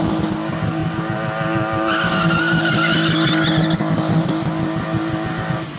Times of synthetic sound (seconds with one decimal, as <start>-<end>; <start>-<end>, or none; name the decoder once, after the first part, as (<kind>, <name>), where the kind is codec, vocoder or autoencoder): none